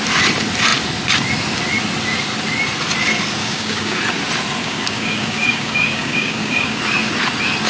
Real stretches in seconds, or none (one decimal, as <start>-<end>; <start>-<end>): 0.0-3.4; 4.0-4.6; 6.8-7.7